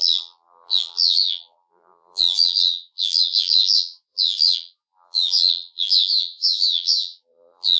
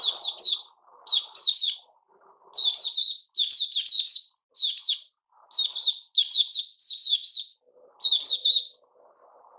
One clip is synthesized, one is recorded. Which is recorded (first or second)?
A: second